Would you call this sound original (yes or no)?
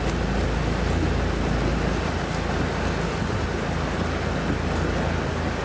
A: yes